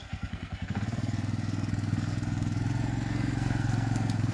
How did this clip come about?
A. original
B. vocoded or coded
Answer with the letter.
B